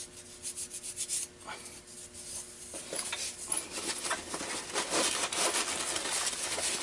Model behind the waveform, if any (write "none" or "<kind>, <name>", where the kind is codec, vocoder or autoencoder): none